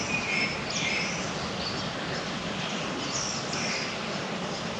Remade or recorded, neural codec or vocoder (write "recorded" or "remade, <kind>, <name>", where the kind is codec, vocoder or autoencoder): recorded